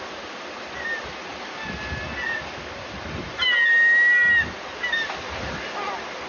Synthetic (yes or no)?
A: no